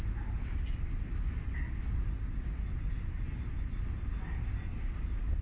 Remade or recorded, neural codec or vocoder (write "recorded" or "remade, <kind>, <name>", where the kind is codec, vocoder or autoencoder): recorded